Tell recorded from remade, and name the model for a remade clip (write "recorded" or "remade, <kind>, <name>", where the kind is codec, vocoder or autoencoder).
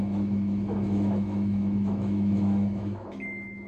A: remade, autoencoder, DAC-VAE